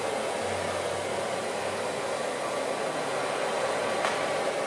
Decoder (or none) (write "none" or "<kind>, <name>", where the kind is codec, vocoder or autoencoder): none